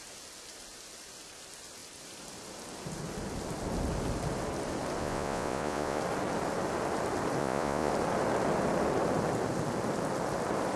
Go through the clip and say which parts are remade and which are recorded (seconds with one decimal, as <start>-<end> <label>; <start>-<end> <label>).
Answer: 0.0-5.0 recorded; 5.0-6.0 remade; 6.0-7.4 recorded; 7.4-7.9 remade; 7.9-10.8 recorded